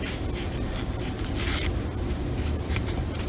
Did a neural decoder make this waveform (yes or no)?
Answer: no